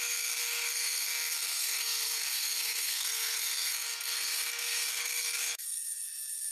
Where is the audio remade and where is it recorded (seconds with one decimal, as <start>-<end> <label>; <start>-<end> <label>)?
0.0-6.5 remade